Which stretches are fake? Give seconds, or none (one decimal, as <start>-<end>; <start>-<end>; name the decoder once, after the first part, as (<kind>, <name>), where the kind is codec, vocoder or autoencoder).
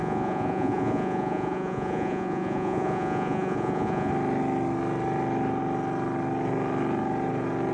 0.0-4.1 (vocoder, Vocos)